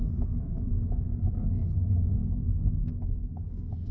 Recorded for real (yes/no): no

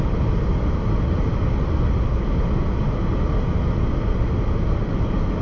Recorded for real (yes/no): yes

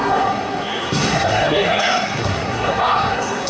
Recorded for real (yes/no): no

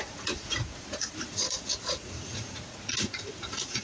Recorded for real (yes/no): no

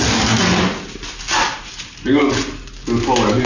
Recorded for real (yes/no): yes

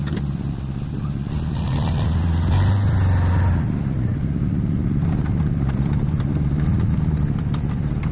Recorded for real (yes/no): yes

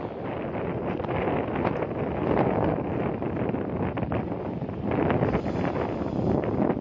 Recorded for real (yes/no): yes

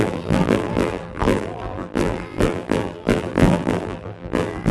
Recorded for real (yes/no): no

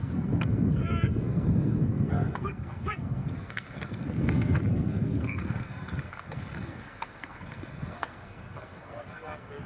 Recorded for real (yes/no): no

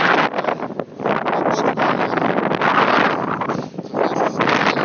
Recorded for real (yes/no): yes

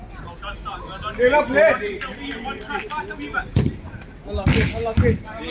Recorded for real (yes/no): yes